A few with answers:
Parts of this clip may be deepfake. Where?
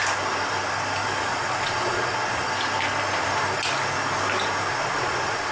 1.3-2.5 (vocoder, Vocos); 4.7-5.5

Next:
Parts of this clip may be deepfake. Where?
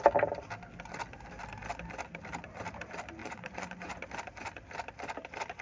3.2-4.0 (vocoder, Vocos)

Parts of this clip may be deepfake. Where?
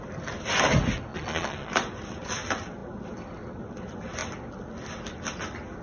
1.1-1.7 (vocoder, Vocos)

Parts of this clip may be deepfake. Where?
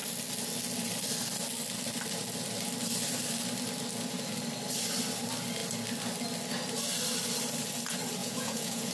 8.2-8.9 (vocoder, Vocos)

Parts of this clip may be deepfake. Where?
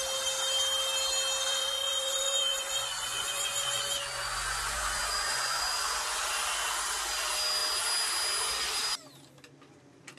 1.5-6.2 (vocoder, Vocos)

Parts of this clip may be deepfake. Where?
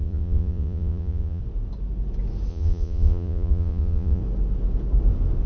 0.0-1.4 (vocoder, Vocos); 2.5-4.2